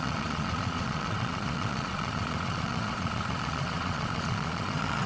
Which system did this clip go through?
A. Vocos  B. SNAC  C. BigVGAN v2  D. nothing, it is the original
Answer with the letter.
A